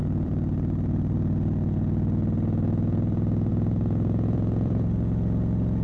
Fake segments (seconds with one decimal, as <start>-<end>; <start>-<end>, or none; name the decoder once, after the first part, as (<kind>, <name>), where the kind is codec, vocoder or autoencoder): 0.0-5.8 (vocoder, Vocos)